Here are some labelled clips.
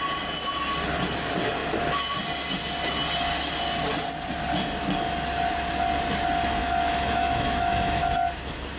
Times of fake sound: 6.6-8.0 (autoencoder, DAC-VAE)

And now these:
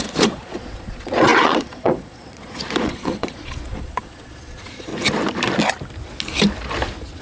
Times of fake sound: 0.0-4.9 (vocoder, Vocos)